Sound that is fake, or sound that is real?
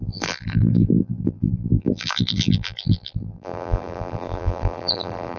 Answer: fake